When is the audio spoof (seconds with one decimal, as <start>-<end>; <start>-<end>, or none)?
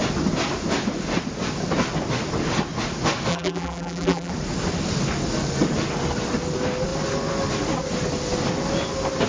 3.3-4.3